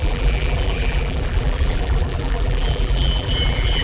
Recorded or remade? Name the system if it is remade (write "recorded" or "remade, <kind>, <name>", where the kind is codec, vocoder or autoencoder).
remade, vocoder, BigVGAN v2